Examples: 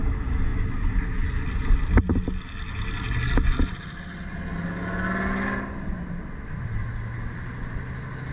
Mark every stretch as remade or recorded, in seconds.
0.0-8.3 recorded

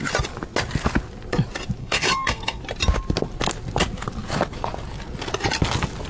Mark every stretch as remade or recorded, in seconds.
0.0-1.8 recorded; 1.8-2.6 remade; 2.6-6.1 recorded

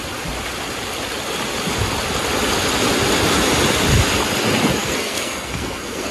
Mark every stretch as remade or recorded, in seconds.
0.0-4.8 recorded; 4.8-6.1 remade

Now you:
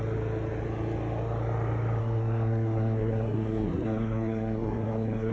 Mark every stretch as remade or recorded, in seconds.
0.0-2.0 recorded; 2.0-5.3 remade

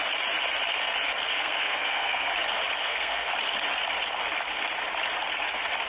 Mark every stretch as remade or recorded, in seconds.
0.0-1.3 recorded; 1.3-2.3 remade; 2.3-2.8 recorded; 2.8-3.3 remade; 3.3-5.9 recorded

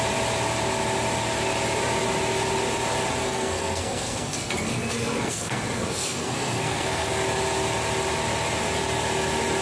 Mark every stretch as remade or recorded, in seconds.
0.0-3.2 recorded; 3.2-7.1 remade; 7.1-9.6 recorded

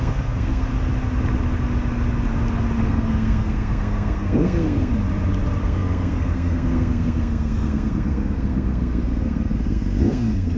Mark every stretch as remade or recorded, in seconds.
0.0-0.7 remade; 0.7-2.8 recorded; 2.8-4.9 remade; 4.9-5.6 recorded; 5.6-10.6 remade

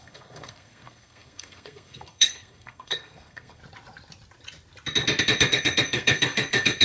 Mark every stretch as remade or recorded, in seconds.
0.0-3.6 remade; 3.6-5.2 recorded; 5.2-6.8 remade